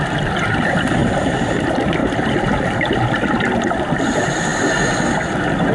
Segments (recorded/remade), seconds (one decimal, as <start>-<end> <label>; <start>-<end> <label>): 0.0-5.7 recorded